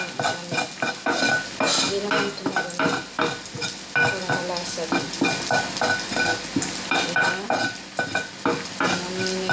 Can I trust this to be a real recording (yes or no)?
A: yes